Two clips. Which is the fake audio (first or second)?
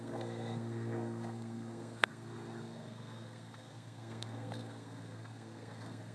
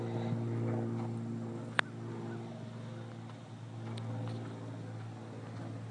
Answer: first